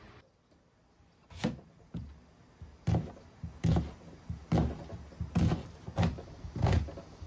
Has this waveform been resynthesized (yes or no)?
no